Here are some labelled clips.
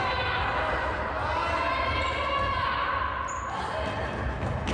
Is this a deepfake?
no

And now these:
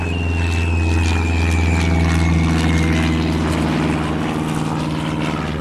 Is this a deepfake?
no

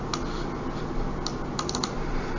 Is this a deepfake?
no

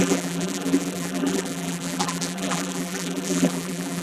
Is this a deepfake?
yes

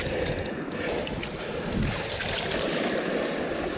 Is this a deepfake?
no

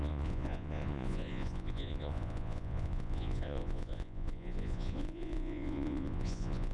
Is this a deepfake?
yes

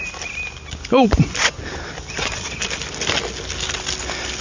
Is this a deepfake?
no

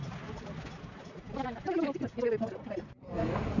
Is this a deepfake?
no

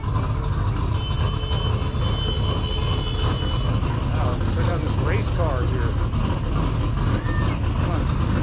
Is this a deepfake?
no